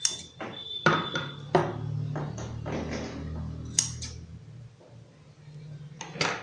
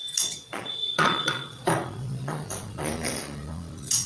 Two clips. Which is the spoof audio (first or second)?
second